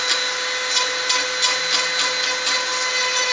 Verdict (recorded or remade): recorded